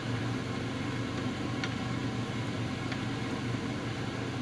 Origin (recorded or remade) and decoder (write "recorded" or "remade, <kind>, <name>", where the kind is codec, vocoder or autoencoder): recorded